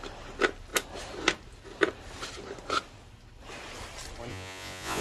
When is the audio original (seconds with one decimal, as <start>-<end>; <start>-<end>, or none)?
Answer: 0.0-4.3